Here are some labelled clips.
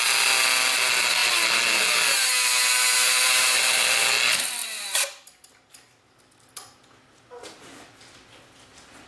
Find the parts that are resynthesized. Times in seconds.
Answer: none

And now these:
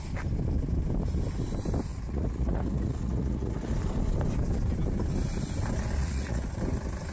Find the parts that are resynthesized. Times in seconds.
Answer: 1.9-3.7 (vocoder, Vocos); 6.0-6.6

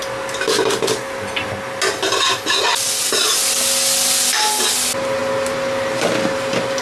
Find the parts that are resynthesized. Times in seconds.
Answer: none

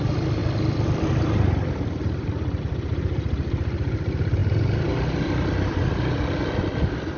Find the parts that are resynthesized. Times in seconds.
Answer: none

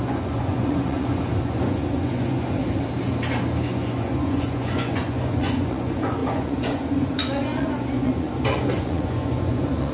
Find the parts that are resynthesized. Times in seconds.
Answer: 0.0-2.6 (vocoder, Vocos); 3.6-9.9